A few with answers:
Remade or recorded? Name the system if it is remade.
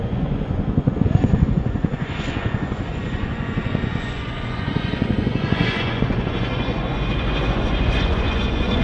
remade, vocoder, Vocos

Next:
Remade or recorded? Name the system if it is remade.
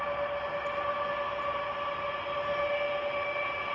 recorded